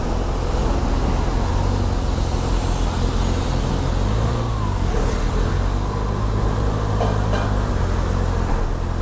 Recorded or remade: recorded